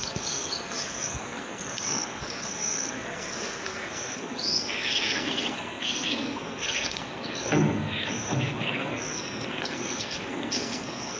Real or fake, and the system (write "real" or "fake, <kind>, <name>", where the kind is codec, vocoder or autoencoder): fake, codec, SNAC